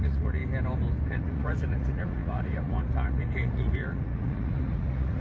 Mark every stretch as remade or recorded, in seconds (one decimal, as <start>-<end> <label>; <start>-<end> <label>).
0.0-0.4 remade; 0.4-1.1 recorded; 1.1-5.2 remade